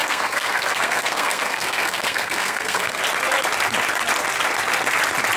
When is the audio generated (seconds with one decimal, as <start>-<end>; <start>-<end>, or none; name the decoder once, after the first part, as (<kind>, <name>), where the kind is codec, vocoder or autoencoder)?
0.0-3.0 (codec, SNAC)